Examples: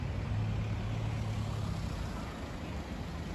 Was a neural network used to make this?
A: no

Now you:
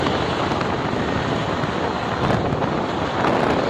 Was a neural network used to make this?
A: no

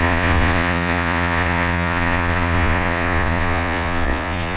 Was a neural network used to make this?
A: yes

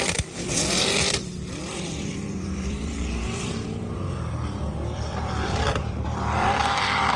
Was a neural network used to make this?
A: yes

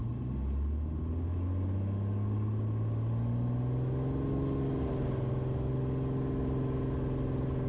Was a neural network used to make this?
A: no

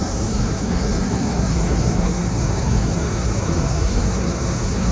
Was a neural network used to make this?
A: yes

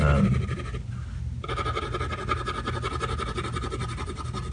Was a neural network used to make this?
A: no